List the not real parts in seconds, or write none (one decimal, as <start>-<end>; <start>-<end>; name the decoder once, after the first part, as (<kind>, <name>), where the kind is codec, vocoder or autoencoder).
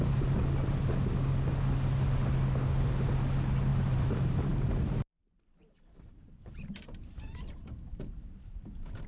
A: 3.7-7.6 (vocoder, BigVGAN v2)